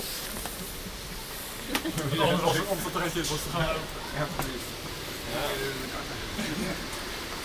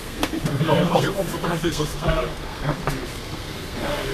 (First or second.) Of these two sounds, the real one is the first